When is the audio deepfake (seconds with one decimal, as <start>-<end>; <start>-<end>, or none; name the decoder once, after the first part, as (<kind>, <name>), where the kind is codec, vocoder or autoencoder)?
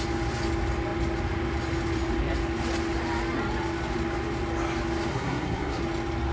5.1-5.8 (codec, SNAC)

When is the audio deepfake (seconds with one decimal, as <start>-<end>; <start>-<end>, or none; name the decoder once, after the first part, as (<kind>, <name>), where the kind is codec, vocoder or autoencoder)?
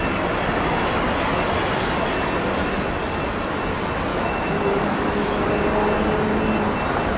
4.1-5.5 (autoencoder, DAC-VAE)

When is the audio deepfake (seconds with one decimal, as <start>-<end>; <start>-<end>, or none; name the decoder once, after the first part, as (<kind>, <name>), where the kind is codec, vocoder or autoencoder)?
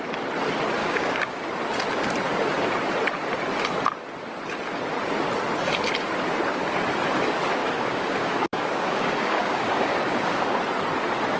0.8-1.4 (codec, DAC); 7.6-10.6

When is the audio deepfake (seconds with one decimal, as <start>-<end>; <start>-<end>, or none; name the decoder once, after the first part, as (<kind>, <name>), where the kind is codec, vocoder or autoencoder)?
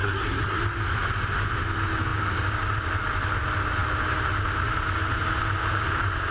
0.0-0.6 (codec, SNAC)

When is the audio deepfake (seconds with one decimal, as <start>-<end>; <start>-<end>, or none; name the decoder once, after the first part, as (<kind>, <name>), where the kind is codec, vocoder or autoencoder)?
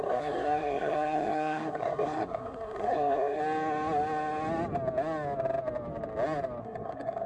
0.0-3.4 (codec, SNAC); 6.6-7.3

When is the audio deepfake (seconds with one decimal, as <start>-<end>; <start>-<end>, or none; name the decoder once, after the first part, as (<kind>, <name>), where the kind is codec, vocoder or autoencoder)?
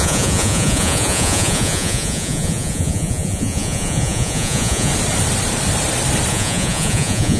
0.0-4.9 (vocoder, Vocos); 6.3-7.4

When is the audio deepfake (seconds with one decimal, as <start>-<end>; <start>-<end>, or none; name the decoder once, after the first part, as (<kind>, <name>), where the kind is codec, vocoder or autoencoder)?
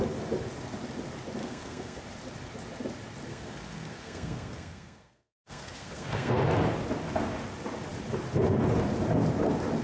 1.4-2.0 (codec, SNAC); 3.3-6.4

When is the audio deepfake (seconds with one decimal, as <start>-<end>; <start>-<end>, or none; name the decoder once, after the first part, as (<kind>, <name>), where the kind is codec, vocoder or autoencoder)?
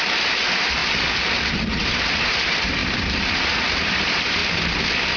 0.0-0.8 (vocoder, BigVGAN v2); 1.5-4.4